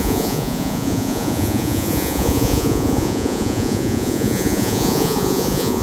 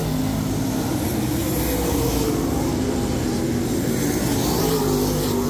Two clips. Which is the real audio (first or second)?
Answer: second